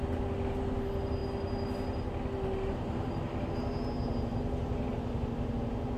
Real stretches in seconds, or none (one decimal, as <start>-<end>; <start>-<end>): 0.0-6.0

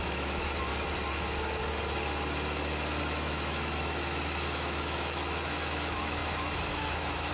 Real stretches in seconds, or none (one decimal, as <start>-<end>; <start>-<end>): 0.7-1.2; 1.6-3.0

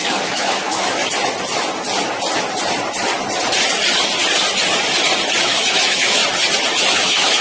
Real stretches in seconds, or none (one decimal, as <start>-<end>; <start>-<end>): 1.0-5.4; 6.2-6.8

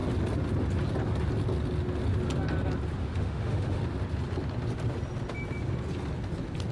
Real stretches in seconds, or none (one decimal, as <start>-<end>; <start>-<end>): 0.0-3.0; 3.8-6.7

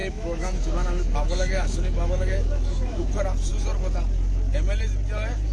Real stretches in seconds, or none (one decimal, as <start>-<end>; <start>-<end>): 3.1-5.5

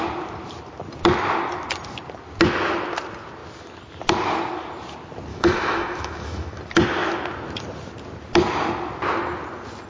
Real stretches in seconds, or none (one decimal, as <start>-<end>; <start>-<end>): 0.0-5.3; 6.6-9.9

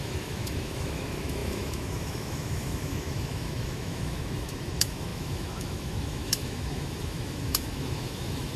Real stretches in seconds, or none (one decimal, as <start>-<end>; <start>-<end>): none